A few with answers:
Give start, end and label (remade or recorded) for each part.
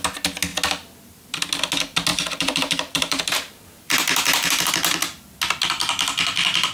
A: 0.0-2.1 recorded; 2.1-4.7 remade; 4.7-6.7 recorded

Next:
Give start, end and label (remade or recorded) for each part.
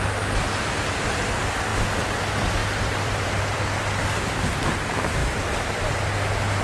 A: 0.0-2.6 recorded; 2.6-3.6 remade; 3.6-5.2 recorded; 5.2-5.8 remade; 5.8-6.6 recorded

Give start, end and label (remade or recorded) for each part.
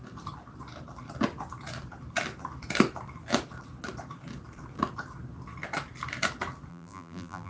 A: 0.0-6.7 recorded; 6.7-7.5 remade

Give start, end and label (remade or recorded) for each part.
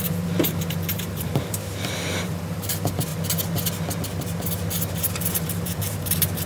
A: 0.0-3.1 remade; 3.1-5.1 recorded; 5.1-6.5 remade